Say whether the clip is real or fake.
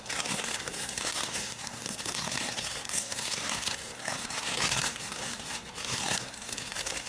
fake